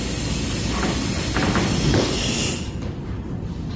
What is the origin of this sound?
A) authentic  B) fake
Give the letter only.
A